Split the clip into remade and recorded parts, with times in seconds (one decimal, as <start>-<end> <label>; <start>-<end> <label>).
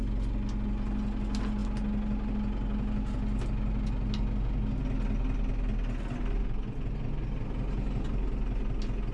0.0-9.1 recorded